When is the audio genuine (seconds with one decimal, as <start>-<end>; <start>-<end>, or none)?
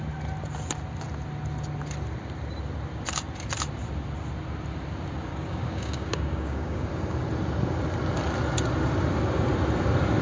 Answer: 0.0-5.3; 6.9-10.2